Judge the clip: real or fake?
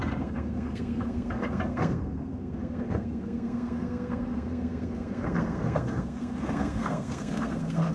fake